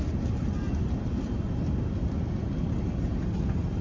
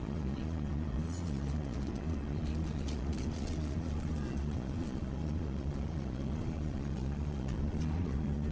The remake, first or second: second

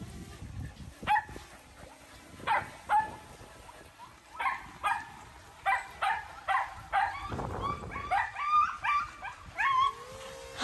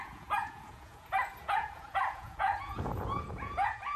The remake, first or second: second